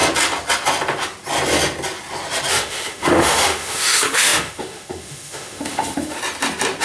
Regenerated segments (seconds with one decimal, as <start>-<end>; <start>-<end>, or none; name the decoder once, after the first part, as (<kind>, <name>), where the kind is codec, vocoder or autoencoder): 2.5-6.2 (autoencoder, DAC-VAE)